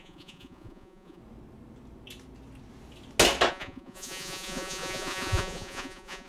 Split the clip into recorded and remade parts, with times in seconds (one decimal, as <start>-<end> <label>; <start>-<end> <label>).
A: 0.0-1.2 remade; 1.2-3.5 recorded; 3.5-6.3 remade